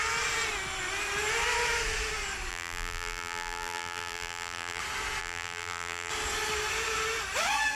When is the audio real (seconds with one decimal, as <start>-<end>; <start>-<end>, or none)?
0.0-2.5; 4.8-5.2; 6.1-7.8